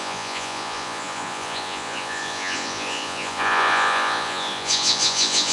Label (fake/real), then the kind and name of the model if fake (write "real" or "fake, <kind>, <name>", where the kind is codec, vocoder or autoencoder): fake, vocoder, Vocos